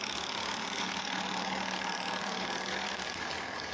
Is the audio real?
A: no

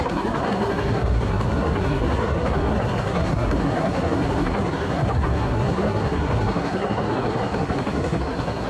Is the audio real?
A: no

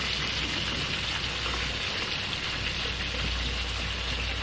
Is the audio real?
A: yes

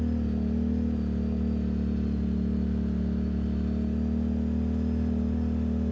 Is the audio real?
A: yes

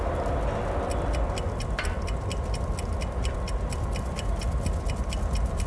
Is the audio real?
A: yes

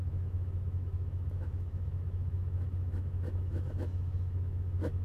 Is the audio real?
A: no